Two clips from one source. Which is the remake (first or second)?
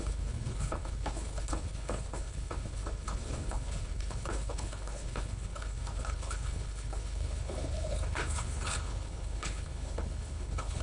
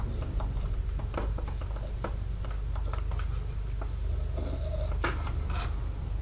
first